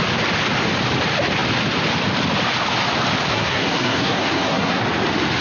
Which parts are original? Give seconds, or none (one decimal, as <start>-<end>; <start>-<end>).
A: 0.0-3.3; 4.8-5.4